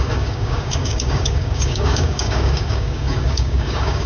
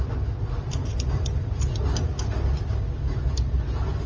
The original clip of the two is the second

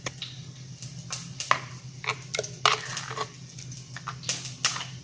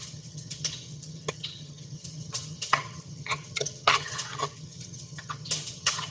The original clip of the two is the first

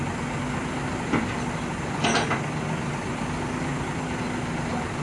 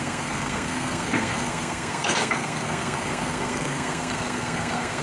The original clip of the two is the first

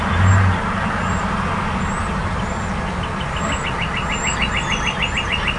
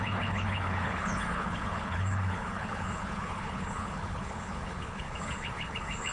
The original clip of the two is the first